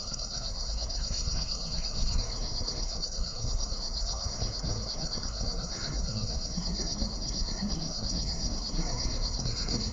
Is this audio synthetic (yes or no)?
yes